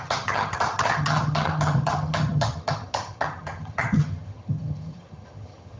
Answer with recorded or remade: remade